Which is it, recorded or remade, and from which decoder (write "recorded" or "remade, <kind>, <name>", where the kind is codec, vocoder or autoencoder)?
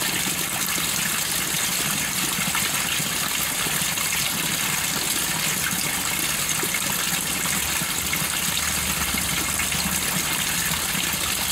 recorded